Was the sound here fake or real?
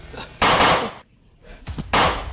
real